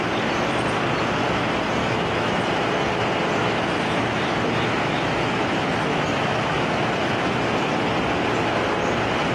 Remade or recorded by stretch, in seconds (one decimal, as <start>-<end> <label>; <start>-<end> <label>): 0.0-1.8 recorded; 1.8-2.4 remade; 2.4-3.4 recorded; 3.4-7.9 remade; 7.9-9.3 recorded